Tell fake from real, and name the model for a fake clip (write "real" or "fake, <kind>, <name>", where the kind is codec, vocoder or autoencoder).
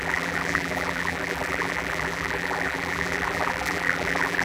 fake, vocoder, BigVGAN v2